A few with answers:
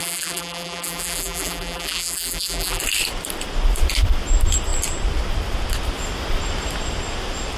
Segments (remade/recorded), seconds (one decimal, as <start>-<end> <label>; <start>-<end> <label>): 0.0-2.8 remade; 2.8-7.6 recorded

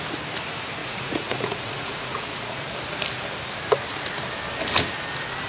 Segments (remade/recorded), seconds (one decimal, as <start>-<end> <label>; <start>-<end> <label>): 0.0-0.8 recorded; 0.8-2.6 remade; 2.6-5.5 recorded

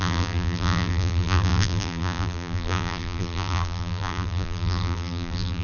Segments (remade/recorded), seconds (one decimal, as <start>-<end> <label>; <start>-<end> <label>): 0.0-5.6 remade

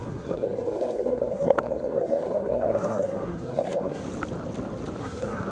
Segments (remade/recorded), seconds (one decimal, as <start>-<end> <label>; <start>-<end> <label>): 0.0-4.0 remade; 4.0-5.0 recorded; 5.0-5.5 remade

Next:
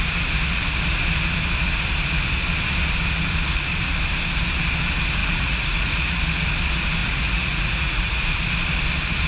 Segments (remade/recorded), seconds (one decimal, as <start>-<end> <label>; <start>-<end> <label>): 0.0-5.2 recorded; 5.2-6.2 remade; 6.2-7.0 recorded; 7.0-8.2 remade; 8.2-9.3 recorded

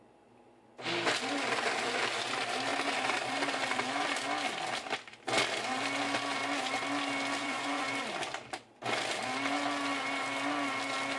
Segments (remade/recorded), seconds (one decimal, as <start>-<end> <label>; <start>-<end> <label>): 0.0-7.4 recorded; 7.4-7.9 remade; 7.9-11.2 recorded

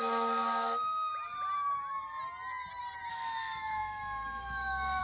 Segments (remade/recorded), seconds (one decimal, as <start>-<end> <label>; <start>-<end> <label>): 0.0-1.1 remade; 1.1-3.1 recorded; 3.1-5.0 remade